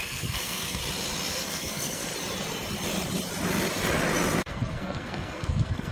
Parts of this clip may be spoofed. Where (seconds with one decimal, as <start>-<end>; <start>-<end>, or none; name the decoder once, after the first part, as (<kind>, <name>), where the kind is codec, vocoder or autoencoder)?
0.0-0.8 (codec, SNAC); 1.3-2.1; 4.4-5.9